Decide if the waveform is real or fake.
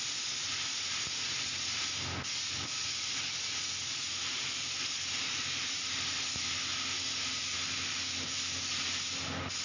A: real